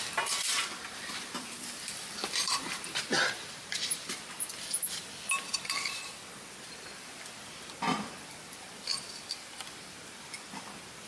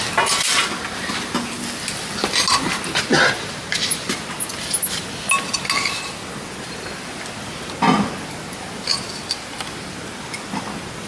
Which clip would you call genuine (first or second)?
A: second